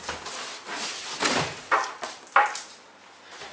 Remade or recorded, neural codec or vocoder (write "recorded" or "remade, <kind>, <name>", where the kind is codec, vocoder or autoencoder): recorded